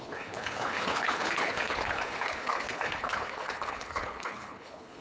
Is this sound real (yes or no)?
no